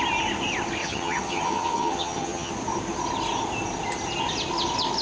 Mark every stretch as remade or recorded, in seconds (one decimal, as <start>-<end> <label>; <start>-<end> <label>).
0.0-0.8 recorded; 0.8-2.5 remade; 2.5-5.0 recorded